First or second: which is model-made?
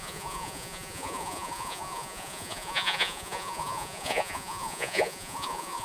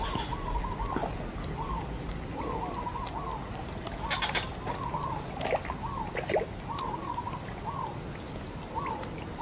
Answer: first